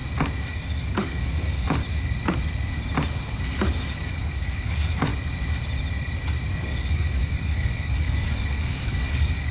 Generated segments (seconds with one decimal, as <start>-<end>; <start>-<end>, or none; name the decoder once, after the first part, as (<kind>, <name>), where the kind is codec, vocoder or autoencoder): 0.5-1.8 (codec, DAC); 3.9-5.1; 6.5-9.5